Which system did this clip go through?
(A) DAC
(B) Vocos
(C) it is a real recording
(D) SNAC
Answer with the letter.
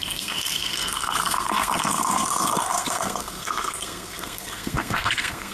D